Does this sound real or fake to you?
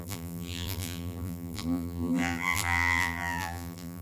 fake